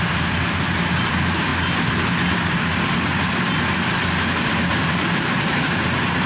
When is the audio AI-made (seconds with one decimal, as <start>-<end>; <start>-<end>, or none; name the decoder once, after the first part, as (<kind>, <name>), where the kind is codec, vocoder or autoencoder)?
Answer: 0.0-1.5 (vocoder, BigVGAN v2); 2.3-2.7; 4.7-6.3